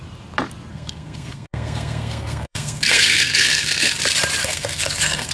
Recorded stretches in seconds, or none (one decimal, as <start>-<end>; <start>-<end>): 0.0-0.7; 3.9-4.4